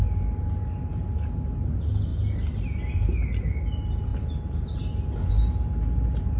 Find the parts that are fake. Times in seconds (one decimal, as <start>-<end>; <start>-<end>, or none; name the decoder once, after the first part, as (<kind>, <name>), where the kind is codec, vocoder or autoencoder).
none